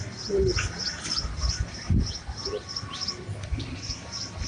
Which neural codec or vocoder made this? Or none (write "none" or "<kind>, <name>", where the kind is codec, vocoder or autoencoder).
none